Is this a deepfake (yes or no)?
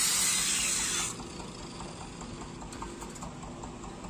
no